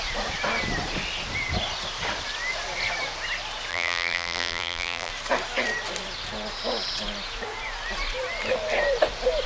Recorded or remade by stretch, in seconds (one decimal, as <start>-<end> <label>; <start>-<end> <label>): 0.0-3.7 recorded; 3.7-5.1 remade; 5.1-9.5 recorded